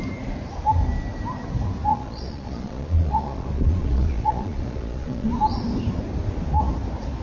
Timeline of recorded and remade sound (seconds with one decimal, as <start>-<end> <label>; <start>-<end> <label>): 0.0-1.9 recorded; 1.9-5.3 remade; 5.3-7.2 recorded